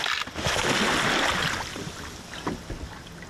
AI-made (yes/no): no